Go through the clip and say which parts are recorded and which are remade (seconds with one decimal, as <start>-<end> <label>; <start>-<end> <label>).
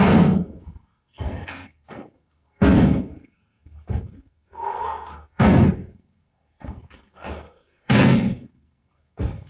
0.0-9.5 remade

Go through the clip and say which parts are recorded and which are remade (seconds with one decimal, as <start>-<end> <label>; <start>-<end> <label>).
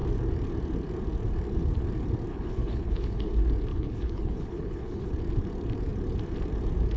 0.0-2.3 recorded; 2.3-3.3 remade; 3.3-3.7 recorded; 3.7-5.1 remade; 5.1-7.0 recorded